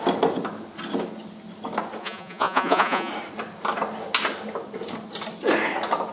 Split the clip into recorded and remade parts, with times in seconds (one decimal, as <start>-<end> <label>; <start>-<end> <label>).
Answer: 0.0-2.0 recorded; 2.0-3.1 remade; 3.1-6.1 recorded